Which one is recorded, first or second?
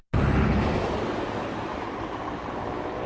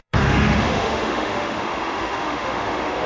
first